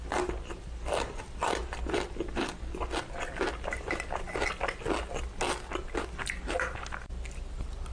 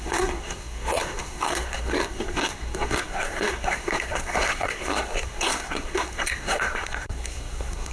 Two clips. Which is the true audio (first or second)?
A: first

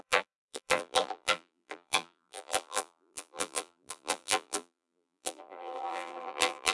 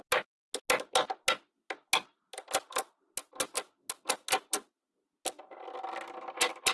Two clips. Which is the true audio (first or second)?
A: second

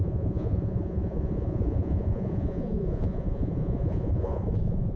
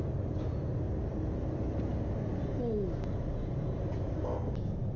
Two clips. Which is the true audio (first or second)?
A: second